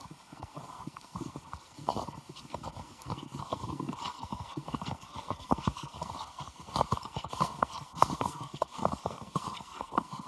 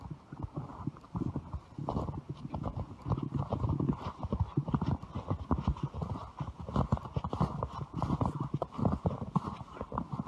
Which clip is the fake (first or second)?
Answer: first